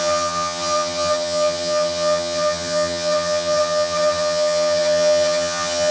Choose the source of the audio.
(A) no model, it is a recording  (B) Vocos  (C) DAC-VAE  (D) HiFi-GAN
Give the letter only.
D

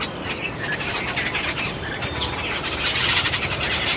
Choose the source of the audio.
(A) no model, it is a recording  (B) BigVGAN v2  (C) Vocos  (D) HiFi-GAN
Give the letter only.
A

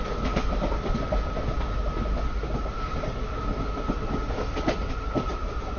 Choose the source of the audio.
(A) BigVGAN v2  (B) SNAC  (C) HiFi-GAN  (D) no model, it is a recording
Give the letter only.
D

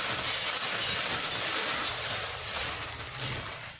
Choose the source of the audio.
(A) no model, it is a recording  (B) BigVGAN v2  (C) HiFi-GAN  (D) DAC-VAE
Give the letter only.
A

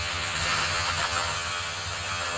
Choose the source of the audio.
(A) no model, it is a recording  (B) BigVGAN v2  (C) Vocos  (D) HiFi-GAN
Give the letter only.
D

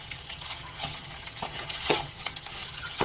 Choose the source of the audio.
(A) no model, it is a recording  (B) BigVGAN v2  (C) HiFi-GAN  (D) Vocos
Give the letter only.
C